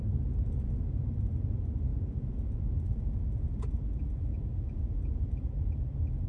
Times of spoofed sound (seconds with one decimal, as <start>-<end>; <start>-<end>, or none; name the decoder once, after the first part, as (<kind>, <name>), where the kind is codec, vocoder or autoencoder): 1.9-5.2 (vocoder, Vocos)